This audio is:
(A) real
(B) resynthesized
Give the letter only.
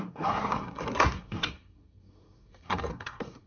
B